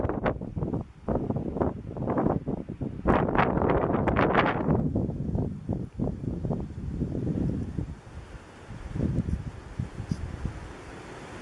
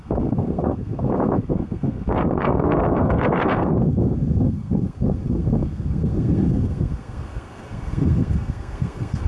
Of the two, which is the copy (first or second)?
second